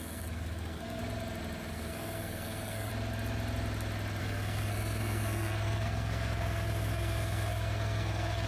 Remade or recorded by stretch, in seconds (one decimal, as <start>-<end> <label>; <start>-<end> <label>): 0.0-1.0 remade; 1.0-1.7 recorded; 1.7-2.9 remade; 2.9-4.2 recorded; 4.2-8.5 remade